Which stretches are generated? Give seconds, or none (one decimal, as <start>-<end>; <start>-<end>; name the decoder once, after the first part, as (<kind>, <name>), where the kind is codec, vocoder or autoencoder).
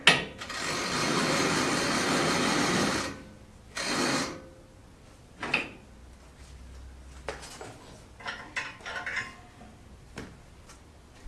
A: none